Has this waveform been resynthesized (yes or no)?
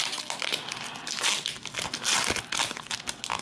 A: no